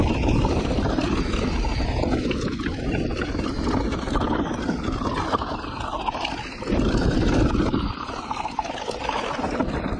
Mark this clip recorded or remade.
recorded